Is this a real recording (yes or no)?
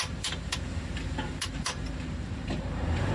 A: no